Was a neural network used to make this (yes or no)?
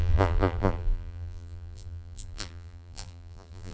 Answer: yes